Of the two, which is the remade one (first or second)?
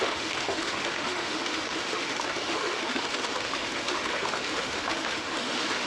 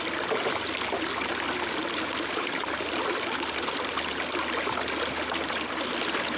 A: first